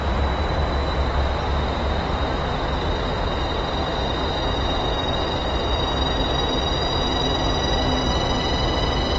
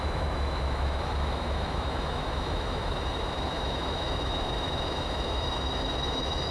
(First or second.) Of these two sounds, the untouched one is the first